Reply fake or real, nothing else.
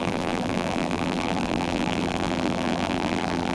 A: fake